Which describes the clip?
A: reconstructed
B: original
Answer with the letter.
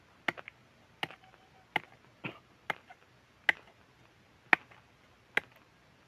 B